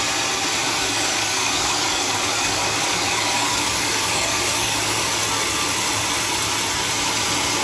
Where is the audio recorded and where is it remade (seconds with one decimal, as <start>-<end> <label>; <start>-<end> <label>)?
0.0-0.6 recorded; 0.6-5.2 remade; 5.2-7.6 recorded